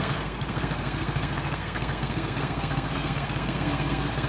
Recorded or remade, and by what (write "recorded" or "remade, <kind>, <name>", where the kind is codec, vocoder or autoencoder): remade, codec, SNAC